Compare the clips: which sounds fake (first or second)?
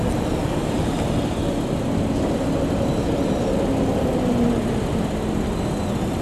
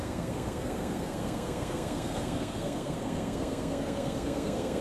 second